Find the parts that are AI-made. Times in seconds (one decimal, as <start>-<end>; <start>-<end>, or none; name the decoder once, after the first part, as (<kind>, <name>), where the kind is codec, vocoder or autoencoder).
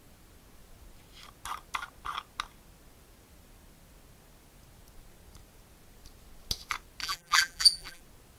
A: 7.0-8.0 (vocoder, BigVGAN v2)